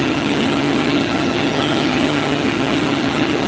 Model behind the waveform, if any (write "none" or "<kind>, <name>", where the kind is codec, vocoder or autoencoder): vocoder, HiFi-GAN